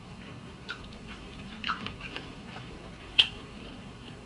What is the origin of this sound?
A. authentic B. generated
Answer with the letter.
B